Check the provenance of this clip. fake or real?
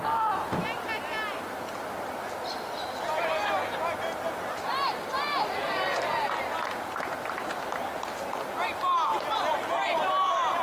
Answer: real